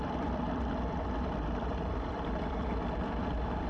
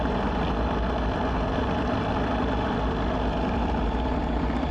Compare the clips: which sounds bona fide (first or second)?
second